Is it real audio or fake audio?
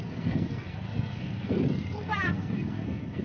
fake